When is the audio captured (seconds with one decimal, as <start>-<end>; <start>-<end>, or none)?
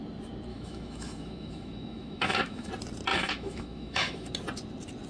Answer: 0.0-0.5; 2.7-3.1; 4.3-5.1